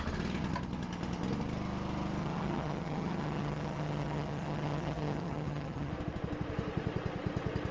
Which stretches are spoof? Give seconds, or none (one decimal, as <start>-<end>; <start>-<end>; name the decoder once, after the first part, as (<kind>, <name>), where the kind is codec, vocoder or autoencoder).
2.2-5.9 (vocoder, HiFi-GAN)